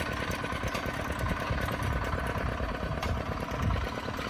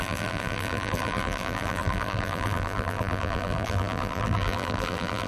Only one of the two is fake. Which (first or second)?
second